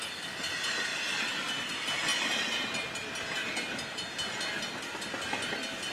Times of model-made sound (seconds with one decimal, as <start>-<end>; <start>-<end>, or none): none